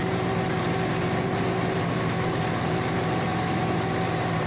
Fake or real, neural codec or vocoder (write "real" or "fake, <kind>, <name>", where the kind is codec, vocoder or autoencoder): fake, vocoder, BigVGAN v2